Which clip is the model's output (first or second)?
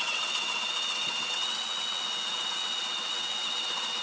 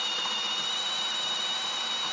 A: first